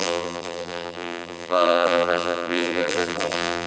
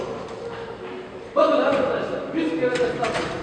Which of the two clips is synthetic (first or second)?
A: first